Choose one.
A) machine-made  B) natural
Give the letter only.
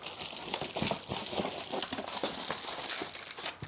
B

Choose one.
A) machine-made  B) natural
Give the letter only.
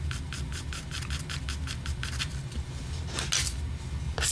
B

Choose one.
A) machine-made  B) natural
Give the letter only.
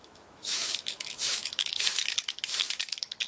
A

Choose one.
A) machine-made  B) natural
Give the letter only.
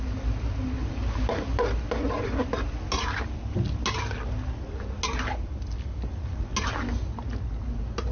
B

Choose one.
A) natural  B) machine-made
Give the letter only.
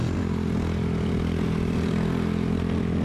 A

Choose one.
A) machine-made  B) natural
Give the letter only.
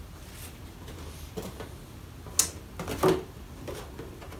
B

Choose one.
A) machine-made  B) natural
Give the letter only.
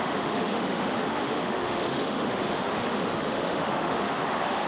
A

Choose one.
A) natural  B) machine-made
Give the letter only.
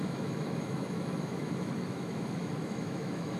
B